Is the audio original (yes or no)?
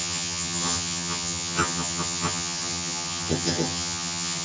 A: no